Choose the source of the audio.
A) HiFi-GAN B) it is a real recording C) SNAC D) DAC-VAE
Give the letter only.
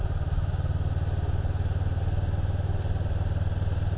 B